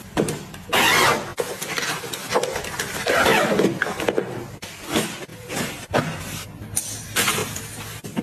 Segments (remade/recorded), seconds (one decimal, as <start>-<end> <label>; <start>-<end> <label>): 0.0-1.3 remade; 1.3-2.9 recorded; 2.9-3.3 remade; 3.3-4.2 recorded; 4.2-7.4 remade; 7.4-8.2 recorded